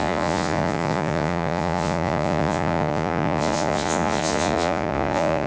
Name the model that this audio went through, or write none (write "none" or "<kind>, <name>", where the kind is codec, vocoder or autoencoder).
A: vocoder, Vocos